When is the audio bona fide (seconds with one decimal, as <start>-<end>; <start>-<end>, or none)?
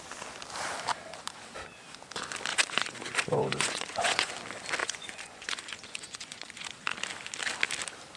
0.0-2.5; 4.3-4.8; 6.5-8.2